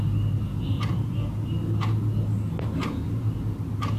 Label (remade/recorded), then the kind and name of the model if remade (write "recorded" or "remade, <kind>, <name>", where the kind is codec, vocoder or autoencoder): recorded